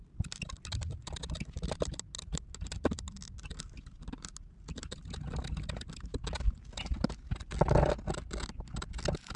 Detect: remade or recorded recorded